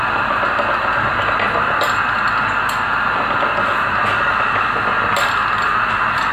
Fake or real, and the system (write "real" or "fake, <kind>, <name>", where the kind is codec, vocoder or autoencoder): real